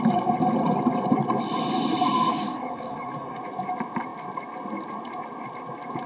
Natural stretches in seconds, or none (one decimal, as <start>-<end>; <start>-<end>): 0.0-2.3; 3.4-6.1